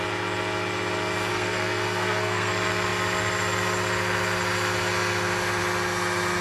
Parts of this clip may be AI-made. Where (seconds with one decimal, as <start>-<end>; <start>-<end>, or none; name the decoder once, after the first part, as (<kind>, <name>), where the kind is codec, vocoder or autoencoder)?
1.3-2.5 (codec, SNAC)